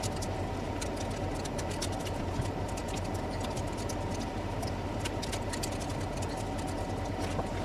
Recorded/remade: recorded